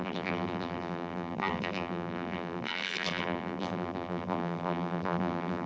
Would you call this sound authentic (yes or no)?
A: no